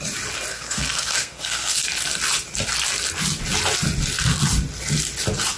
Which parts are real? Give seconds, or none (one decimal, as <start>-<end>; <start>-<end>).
0.0-0.5; 1.8-5.6